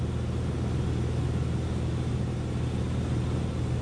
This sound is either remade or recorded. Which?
recorded